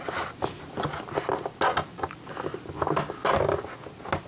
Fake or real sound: real